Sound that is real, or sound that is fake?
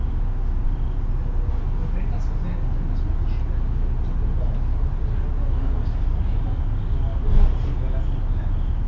real